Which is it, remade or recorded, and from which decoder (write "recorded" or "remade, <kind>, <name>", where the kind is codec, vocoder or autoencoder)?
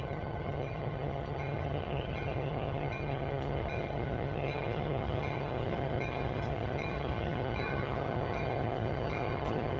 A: remade, vocoder, HiFi-GAN